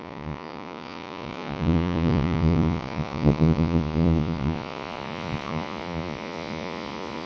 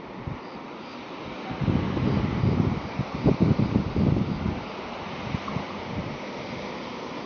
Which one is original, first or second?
second